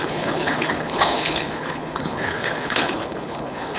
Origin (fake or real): fake